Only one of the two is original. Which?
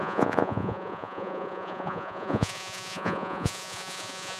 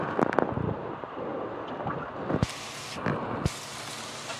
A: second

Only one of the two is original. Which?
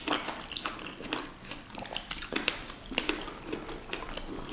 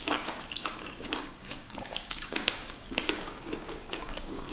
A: first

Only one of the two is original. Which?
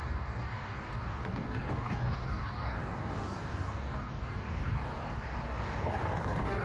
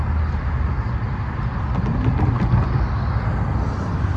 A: second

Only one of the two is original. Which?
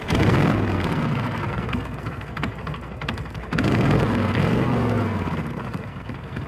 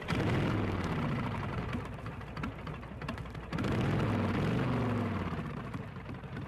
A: second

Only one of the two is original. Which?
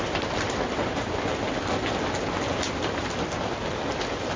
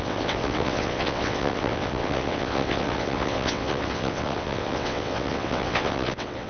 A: first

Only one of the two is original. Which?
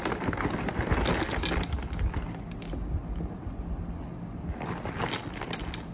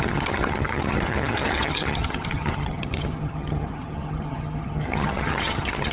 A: first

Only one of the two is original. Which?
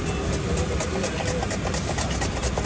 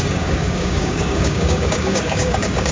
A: first